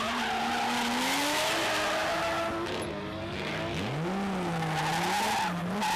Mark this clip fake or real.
real